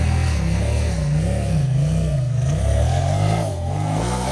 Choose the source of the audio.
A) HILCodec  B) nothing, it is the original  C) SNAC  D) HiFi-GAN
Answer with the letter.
C